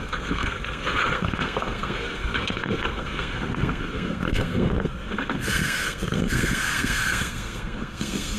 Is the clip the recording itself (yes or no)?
no